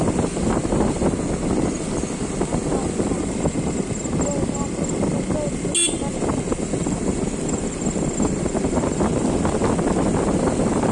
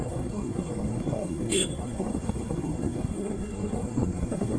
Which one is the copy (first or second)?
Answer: second